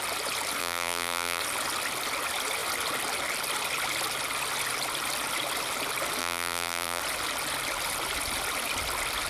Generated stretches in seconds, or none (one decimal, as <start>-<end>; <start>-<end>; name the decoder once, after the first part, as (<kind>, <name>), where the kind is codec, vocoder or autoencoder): 0.6-1.4 (vocoder, BigVGAN v2); 6.2-7.0